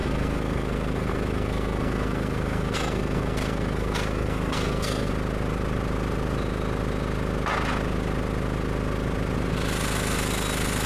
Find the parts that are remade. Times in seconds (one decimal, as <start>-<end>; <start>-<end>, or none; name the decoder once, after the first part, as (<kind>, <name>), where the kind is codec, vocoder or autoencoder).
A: 0.0-5.1 (codec, SNAC)